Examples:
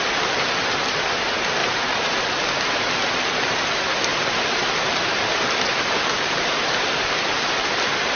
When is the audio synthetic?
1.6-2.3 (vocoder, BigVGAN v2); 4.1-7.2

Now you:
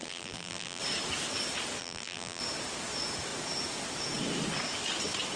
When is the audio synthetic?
0.0-0.8 (vocoder, BigVGAN v2); 1.8-2.4